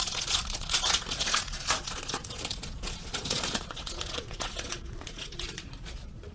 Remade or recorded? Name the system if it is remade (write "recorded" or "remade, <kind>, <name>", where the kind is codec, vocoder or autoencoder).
remade, vocoder, Vocos